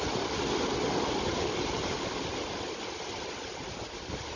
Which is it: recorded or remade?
recorded